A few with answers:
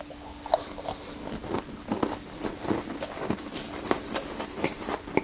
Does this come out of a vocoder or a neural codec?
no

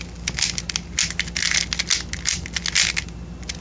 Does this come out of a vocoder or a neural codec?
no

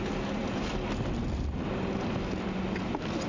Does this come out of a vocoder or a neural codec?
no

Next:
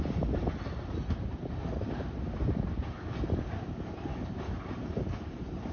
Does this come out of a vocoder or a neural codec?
no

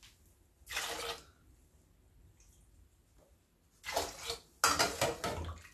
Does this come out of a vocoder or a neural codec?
no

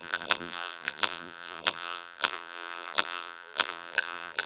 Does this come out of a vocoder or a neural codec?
yes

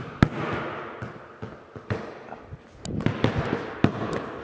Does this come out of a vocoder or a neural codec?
no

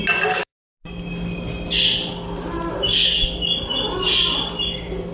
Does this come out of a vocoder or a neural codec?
no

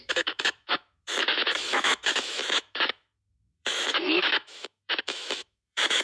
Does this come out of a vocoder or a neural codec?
yes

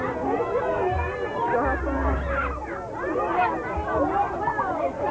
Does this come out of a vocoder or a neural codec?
no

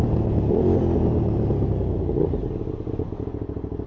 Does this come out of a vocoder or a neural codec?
no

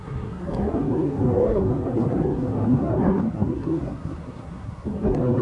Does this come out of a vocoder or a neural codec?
yes